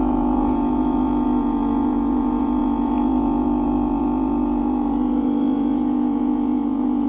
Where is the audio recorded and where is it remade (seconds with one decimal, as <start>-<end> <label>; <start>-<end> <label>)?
0.0-7.1 remade